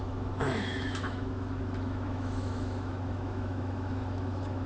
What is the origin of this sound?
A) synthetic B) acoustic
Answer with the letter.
A